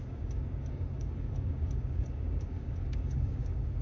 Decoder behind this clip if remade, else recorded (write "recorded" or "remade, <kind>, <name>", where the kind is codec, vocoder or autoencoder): remade, codec, DAC